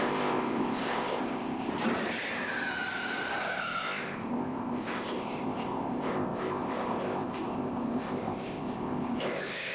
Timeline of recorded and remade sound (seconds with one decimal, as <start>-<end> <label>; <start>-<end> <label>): 0.0-1.7 remade; 1.7-3.4 recorded; 3.4-9.7 remade